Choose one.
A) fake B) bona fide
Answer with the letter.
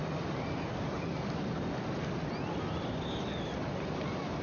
B